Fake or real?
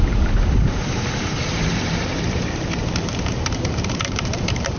fake